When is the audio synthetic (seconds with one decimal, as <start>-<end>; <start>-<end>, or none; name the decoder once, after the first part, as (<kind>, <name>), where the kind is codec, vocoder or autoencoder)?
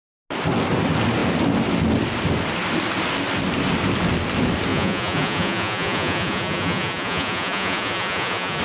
4.7-8.6 (vocoder, Vocos)